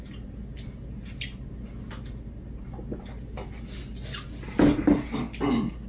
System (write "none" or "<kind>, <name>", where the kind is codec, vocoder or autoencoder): none